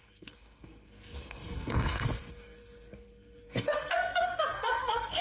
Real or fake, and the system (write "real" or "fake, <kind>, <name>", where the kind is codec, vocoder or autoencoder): fake, codec, SNAC